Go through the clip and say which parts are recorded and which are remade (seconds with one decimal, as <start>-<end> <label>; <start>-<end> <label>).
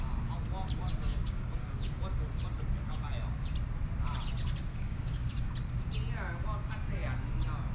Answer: 0.0-1.1 recorded; 1.1-1.9 remade; 1.9-4.7 recorded; 4.7-5.3 remade; 5.3-7.7 recorded